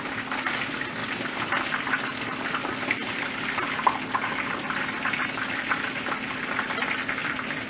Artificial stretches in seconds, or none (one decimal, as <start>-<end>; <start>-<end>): none